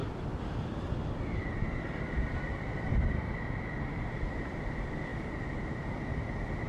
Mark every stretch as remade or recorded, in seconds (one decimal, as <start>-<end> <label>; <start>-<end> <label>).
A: 0.0-5.1 remade; 5.1-6.7 recorded